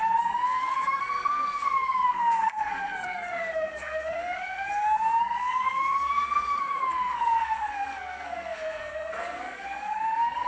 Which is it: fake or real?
fake